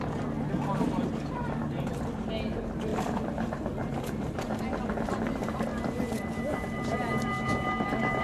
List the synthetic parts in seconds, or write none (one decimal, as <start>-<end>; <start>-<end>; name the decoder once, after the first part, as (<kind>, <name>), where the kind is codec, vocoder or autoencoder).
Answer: 1.4-2.3 (vocoder, BigVGAN v2); 2.9-4.6; 5.7-7.1